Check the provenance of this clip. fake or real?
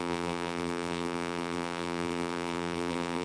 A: fake